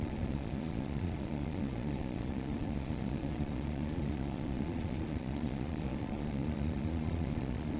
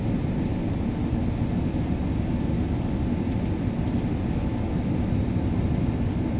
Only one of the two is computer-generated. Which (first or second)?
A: first